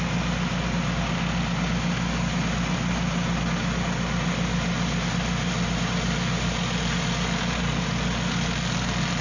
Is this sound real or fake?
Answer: real